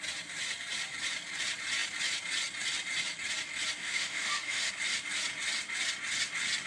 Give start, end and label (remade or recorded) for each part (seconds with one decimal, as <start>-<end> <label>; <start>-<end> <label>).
0.0-3.8 recorded; 3.8-4.7 remade; 4.7-6.7 recorded